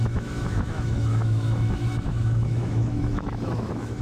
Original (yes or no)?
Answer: no